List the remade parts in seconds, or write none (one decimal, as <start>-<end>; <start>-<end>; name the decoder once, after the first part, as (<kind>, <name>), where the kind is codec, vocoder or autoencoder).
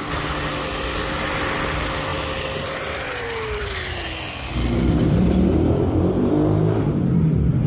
2.1-6.3 (vocoder, BigVGAN v2)